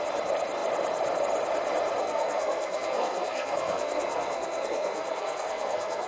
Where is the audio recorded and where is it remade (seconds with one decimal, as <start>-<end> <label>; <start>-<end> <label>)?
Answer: 0.0-2.0 recorded; 2.0-6.1 remade